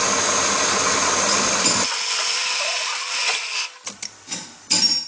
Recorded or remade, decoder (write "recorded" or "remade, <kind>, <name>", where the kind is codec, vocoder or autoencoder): recorded